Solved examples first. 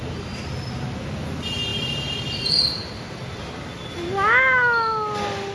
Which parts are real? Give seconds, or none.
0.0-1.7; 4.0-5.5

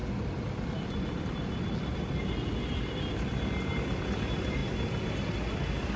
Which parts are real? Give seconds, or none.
0.0-6.0

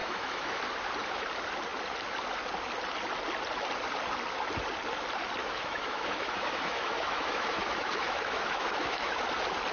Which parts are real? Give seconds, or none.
0.6-5.4; 9.2-9.7

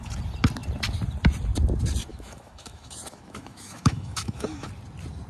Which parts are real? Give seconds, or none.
0.0-2.1; 4.7-5.3

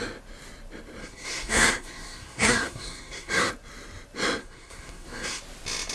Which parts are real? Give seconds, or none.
0.0-1.0; 3.5-4.4; 5.4-5.9

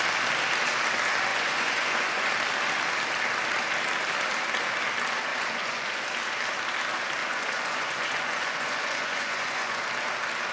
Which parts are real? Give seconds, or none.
0.0-1.3; 2.3-5.3; 6.0-7.2; 9.8-10.5

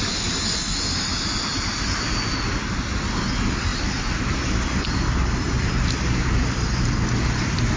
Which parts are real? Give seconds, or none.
0.0-7.8

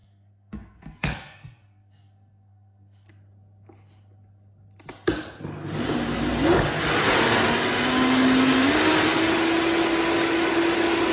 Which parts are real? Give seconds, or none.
3.1-11.1